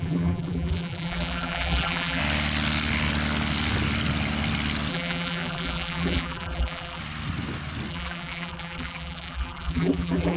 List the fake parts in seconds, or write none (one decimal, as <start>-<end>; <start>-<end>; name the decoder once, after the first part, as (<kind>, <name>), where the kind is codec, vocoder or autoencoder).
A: 0.0-2.2 (vocoder, BigVGAN v2); 4.9-7.0; 7.9-10.4